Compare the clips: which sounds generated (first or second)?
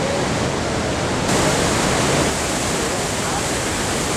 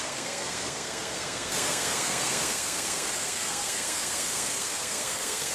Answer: second